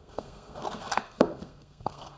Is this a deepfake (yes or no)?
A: yes